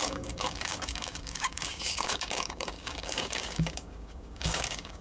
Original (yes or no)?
no